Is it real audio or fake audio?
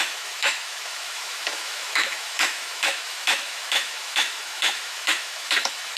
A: fake